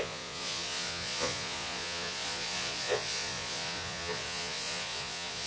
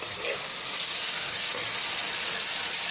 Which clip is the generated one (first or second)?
first